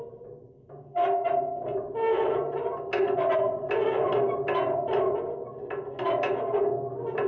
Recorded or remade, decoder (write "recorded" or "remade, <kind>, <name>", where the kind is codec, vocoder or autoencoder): recorded